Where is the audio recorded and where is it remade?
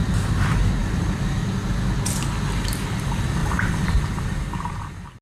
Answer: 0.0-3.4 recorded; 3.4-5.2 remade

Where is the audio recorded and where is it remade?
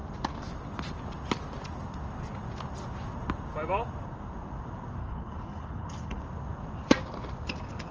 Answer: 0.0-5.0 recorded; 5.0-6.2 remade; 6.2-7.9 recorded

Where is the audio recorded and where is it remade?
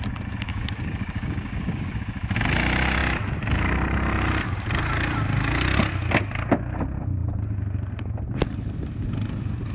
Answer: 0.0-0.5 recorded; 0.5-2.0 remade; 2.0-9.7 recorded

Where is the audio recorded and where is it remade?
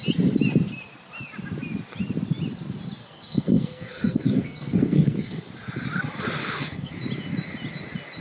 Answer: 0.0-3.0 recorded; 3.0-5.4 remade; 5.4-6.4 recorded; 6.4-6.9 remade; 6.9-8.2 recorded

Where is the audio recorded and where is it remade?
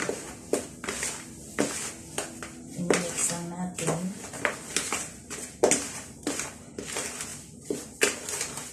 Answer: 0.0-8.7 recorded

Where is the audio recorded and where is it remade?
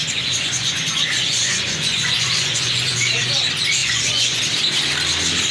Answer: 0.0-3.3 remade; 3.3-3.8 recorded; 3.8-4.4 remade; 4.4-5.5 recorded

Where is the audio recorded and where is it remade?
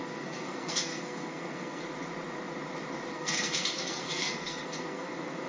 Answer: 0.0-1.8 remade; 1.8-3.1 recorded; 3.1-5.5 remade